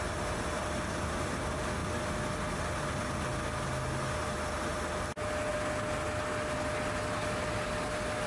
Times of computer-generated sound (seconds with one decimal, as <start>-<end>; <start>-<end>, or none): none